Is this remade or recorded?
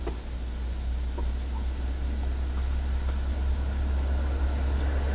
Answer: recorded